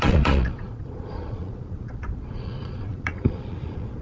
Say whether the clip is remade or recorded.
remade